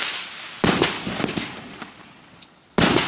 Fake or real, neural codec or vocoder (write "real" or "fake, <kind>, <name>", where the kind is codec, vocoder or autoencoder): real